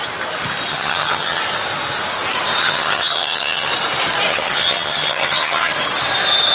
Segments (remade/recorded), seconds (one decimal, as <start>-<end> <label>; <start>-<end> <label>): 0.0-0.7 recorded; 0.7-1.4 remade; 1.4-2.6 recorded; 2.6-3.7 remade; 3.7-4.3 recorded; 4.3-5.7 remade; 5.7-6.5 recorded

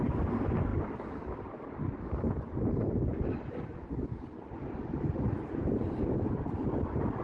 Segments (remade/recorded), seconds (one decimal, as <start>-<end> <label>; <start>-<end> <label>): 0.0-7.2 recorded